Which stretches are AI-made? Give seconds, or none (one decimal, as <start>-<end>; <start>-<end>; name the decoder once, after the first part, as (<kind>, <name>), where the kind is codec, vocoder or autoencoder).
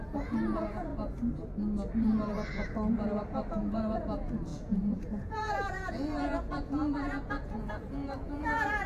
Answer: 0.0-0.9 (vocoder, Vocos); 3.5-8.9